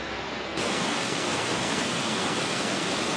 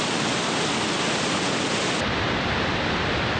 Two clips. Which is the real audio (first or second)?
second